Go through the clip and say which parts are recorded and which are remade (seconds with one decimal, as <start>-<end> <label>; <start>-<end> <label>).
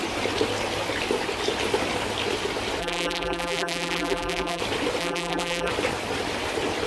0.0-2.8 recorded; 2.8-4.6 remade; 4.6-5.0 recorded; 5.0-5.7 remade; 5.7-6.9 recorded